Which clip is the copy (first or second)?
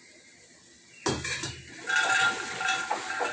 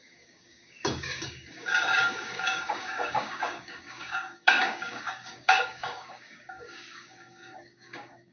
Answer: second